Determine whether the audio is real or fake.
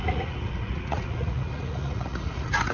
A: fake